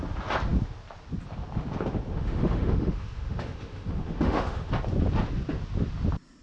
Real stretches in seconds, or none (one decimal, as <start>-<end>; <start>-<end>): 0.0-2.1; 4.7-6.4